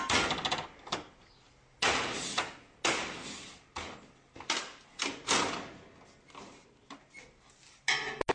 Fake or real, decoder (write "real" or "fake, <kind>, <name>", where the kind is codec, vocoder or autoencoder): real